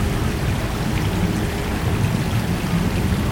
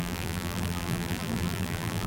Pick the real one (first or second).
first